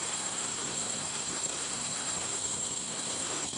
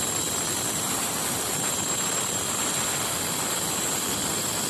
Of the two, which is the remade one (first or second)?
first